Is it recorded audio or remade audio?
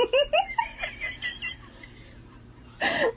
remade